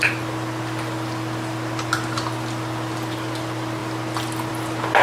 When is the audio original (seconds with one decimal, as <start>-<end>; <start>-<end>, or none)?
0.0-5.0